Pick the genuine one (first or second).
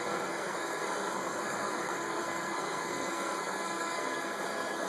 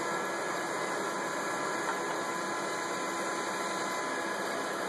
second